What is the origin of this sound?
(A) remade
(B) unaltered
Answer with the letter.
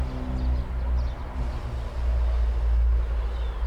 B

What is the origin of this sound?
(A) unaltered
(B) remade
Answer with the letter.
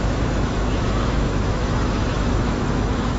B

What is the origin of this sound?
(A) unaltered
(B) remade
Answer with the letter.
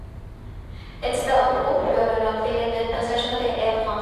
A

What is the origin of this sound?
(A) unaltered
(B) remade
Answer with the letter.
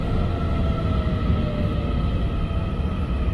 A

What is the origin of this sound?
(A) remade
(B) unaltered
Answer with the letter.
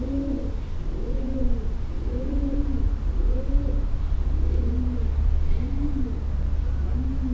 B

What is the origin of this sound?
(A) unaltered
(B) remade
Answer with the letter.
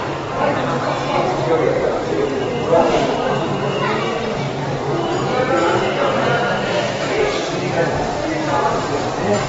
A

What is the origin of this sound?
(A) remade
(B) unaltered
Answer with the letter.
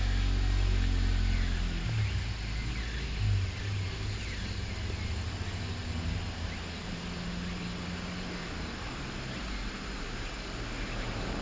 B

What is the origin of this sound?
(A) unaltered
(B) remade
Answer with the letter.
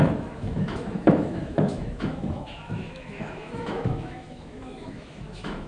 B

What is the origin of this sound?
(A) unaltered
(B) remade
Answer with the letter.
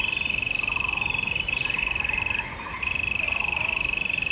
A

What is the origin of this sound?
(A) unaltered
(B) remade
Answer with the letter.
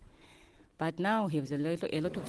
A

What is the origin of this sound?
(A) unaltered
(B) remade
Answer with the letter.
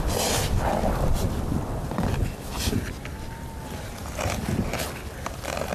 A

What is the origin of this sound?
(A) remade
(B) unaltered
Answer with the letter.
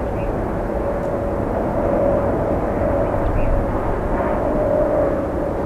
B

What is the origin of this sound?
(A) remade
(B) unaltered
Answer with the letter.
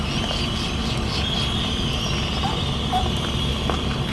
B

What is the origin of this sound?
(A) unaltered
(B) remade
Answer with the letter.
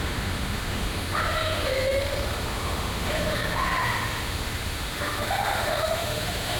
B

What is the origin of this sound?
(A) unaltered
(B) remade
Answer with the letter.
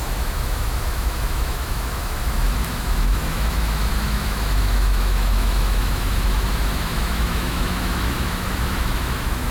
B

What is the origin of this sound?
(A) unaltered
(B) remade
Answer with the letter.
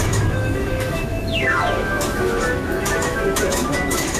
B